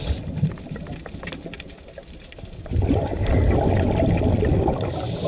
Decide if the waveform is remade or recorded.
recorded